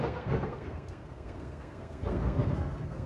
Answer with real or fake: fake